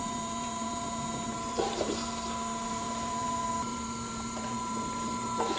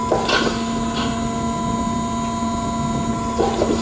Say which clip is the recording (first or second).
second